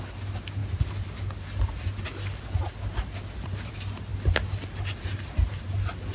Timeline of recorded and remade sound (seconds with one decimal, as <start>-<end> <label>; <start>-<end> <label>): 0.0-6.1 recorded